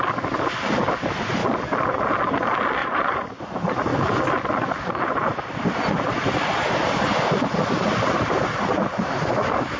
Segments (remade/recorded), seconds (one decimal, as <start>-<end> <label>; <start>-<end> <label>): 0.0-2.8 recorded; 2.8-3.4 remade; 3.4-9.8 recorded

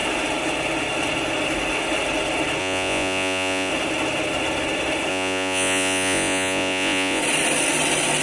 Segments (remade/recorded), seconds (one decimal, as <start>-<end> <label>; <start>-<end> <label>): 0.0-2.6 recorded; 2.6-3.7 remade; 3.7-5.1 recorded; 5.1-7.2 remade; 7.2-8.2 recorded

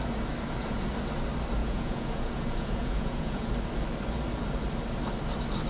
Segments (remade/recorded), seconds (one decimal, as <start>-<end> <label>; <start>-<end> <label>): 0.0-1.6 recorded; 1.6-3.5 remade; 3.5-5.7 recorded